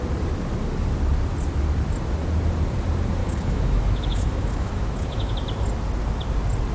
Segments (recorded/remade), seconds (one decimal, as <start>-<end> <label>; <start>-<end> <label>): 0.0-3.2 recorded; 3.2-5.3 remade; 5.3-6.7 recorded